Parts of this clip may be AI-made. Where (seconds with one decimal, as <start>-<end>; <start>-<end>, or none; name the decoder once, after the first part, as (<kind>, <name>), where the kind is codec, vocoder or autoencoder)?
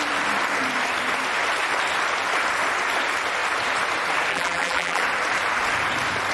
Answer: 4.3-5.0 (vocoder, BigVGAN v2)